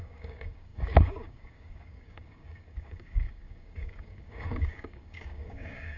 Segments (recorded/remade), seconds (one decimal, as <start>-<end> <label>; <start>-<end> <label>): 0.0-6.0 remade